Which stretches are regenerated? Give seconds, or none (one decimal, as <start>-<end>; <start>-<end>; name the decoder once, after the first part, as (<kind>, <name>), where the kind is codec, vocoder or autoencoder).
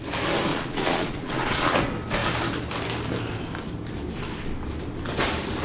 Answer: 0.5-1.8 (vocoder, Vocos)